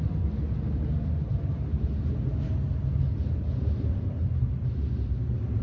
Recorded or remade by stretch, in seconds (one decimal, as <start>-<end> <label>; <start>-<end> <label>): 0.0-5.6 recorded